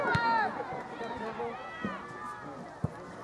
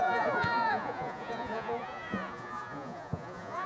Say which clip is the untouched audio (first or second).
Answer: first